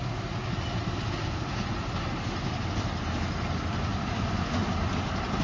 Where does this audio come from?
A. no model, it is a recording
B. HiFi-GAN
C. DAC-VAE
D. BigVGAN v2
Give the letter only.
A